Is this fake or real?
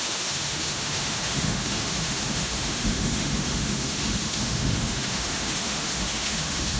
fake